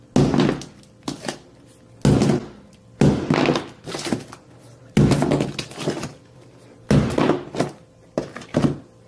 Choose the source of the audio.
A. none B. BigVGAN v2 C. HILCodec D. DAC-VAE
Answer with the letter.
A